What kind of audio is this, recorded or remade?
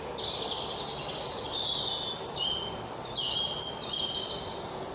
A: recorded